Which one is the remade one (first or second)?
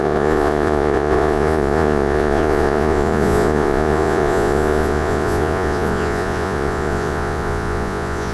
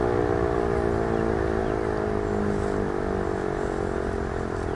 first